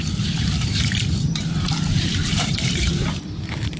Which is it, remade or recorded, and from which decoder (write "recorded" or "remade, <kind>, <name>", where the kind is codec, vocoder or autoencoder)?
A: remade, vocoder, BigVGAN v2